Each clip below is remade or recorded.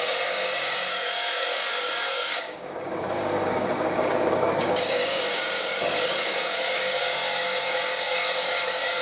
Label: remade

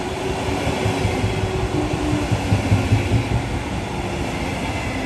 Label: recorded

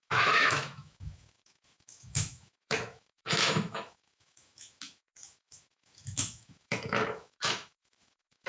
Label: remade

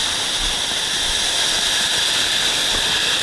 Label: recorded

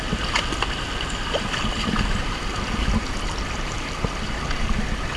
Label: recorded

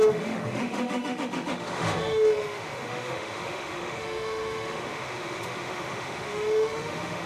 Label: remade